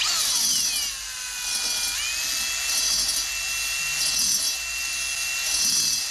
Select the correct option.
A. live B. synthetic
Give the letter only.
A